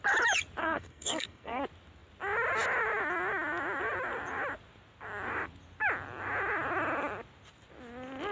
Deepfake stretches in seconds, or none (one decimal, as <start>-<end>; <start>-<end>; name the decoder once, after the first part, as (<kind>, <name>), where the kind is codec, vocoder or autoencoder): 0.6-1.6 (codec, SNAC)